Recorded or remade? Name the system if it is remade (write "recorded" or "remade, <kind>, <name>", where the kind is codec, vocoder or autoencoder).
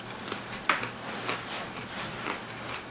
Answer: recorded